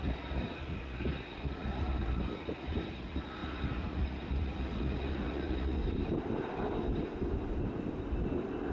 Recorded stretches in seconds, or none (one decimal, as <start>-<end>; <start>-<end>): 5.8-8.7